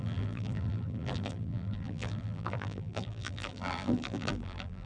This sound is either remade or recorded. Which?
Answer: remade